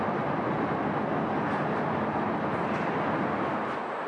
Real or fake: real